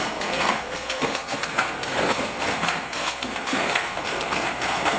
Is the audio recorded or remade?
remade